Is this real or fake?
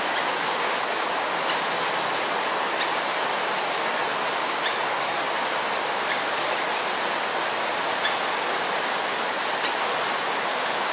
real